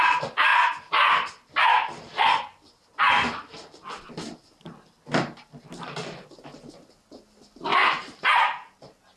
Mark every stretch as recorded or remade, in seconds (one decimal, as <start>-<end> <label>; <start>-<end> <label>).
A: 0.0-7.8 recorded; 7.8-8.4 remade; 8.4-9.2 recorded